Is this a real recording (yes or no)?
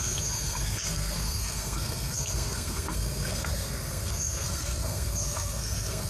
no